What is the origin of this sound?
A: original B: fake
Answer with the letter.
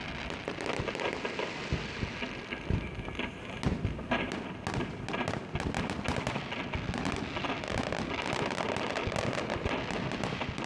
A